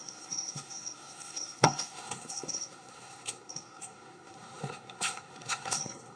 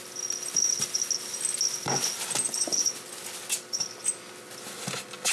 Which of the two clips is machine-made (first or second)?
first